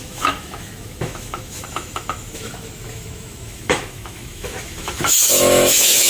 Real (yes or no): no